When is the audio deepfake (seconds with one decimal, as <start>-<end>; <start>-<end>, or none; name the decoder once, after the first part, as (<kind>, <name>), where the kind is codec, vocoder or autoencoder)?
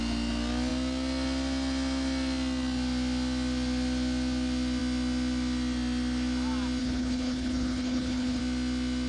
6.8-8.4 (codec, HILCodec)